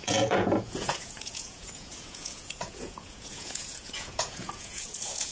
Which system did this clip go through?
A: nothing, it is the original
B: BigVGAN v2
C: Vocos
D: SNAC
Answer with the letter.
C